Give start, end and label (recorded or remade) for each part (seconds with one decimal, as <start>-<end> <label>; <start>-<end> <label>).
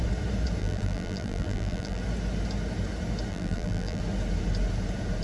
0.0-0.6 recorded; 0.6-2.0 remade; 2.0-3.3 recorded; 3.3-4.0 remade; 4.0-5.2 recorded